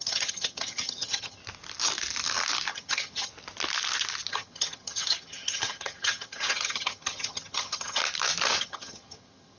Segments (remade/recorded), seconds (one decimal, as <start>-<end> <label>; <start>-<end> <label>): 0.0-1.4 remade; 1.4-2.7 recorded; 2.7-3.3 remade; 3.3-4.3 recorded; 4.3-8.0 remade; 8.0-8.6 recorded; 8.6-9.6 remade